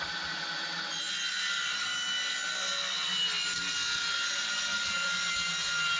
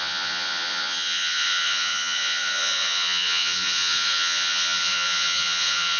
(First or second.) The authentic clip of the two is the first